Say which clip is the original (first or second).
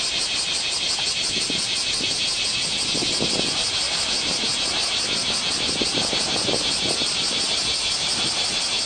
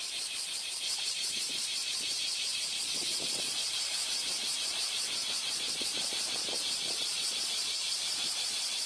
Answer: first